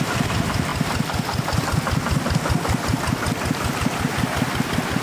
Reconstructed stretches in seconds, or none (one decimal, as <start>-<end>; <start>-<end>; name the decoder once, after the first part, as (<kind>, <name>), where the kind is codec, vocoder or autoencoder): none